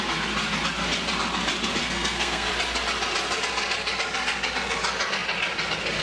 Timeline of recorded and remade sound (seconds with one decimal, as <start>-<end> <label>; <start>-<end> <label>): 0.0-1.8 recorded; 1.8-2.5 remade; 2.5-6.0 recorded